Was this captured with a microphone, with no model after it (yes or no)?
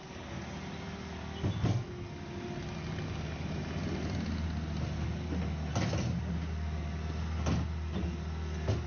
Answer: yes